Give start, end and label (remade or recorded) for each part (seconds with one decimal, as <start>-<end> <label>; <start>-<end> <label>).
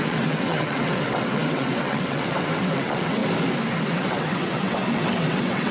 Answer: 0.0-3.2 remade; 3.2-3.9 recorded; 3.9-5.7 remade